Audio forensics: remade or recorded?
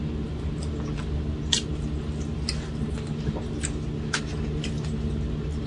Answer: recorded